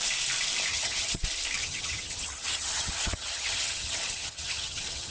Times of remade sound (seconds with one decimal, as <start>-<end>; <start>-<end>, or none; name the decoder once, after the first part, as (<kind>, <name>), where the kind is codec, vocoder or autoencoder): 0.7-1.2 (vocoder, HiFi-GAN); 1.6-5.1